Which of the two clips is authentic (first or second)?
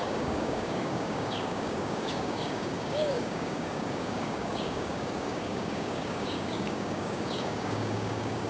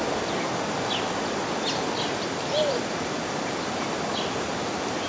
second